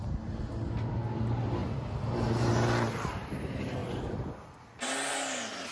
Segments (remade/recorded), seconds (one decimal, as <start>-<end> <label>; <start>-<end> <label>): 0.0-5.7 recorded